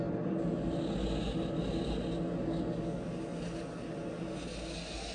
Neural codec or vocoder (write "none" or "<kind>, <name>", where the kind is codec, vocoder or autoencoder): none